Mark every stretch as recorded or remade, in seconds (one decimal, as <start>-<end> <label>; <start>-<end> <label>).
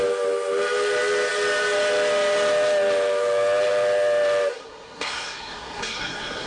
0.0-4.5 recorded; 4.5-6.5 remade